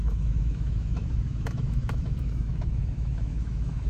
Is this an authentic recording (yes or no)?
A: no